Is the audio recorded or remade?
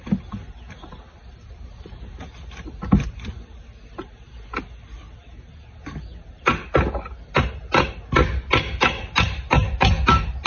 recorded